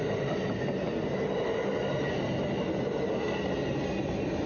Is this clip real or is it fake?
real